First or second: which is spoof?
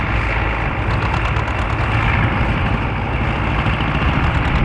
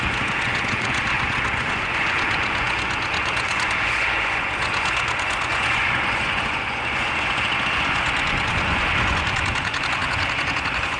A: second